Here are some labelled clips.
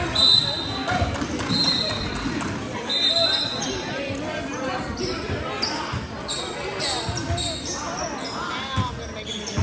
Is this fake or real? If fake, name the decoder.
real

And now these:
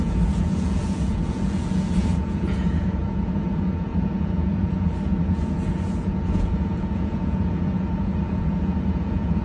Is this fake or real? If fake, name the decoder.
fake, vocoder, Vocos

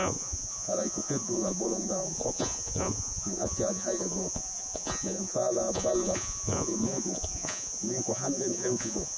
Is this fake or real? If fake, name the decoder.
fake, vocoder, Vocos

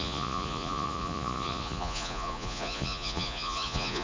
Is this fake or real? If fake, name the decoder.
fake, vocoder, Vocos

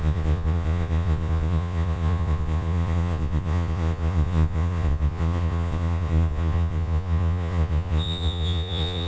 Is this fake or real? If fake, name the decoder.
fake, vocoder, Vocos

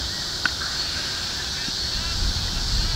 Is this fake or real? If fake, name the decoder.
real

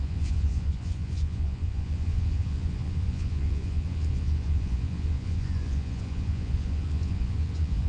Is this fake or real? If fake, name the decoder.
fake, vocoder, Vocos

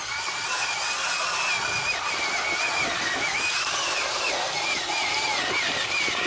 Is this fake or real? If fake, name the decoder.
real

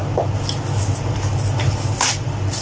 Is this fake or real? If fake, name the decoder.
real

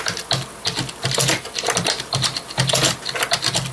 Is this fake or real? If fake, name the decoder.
real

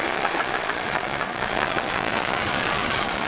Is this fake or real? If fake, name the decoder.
fake, vocoder, Vocos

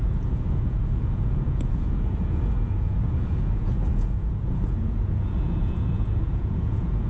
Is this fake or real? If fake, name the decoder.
fake, vocoder, Vocos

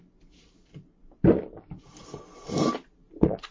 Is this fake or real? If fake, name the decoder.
real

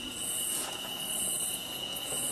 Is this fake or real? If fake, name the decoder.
fake, vocoder, Vocos